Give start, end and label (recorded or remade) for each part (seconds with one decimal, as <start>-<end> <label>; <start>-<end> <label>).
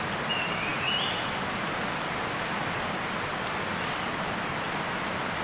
0.0-5.4 recorded